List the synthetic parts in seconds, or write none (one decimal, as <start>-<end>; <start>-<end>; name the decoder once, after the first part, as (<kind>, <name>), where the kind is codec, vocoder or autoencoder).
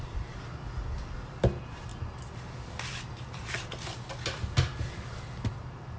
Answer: none